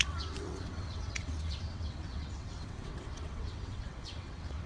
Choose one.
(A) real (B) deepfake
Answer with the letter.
B